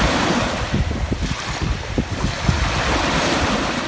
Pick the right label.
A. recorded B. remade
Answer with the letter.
A